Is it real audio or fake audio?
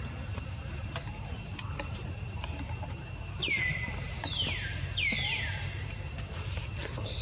fake